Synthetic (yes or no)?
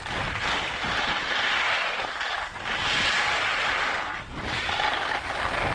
no